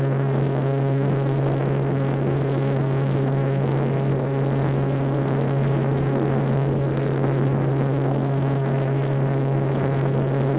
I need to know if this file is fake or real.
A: fake